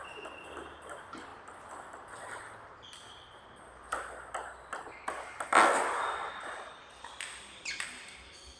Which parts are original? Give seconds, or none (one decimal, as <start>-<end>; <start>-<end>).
0.0-8.6